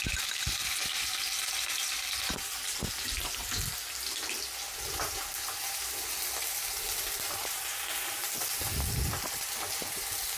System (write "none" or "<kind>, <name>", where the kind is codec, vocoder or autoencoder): none